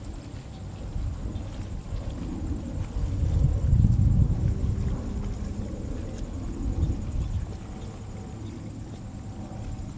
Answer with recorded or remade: recorded